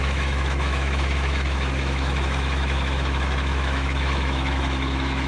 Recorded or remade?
remade